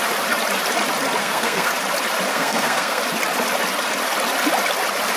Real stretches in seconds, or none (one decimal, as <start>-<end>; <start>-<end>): 0.0-1.2; 1.7-2.3; 3.0-5.2